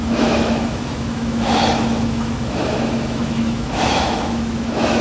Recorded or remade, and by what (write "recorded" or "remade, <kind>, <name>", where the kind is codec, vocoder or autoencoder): remade, autoencoder, DAC-VAE